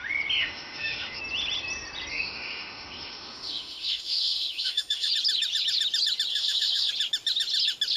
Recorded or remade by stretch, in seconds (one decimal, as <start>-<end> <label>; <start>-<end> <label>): 0.0-0.4 recorded; 0.4-1.2 remade; 1.2-2.1 recorded; 2.1-5.1 remade; 5.1-6.3 recorded; 6.3-6.9 remade; 6.9-8.0 recorded